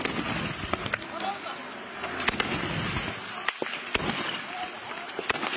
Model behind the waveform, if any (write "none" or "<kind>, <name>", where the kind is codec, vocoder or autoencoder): none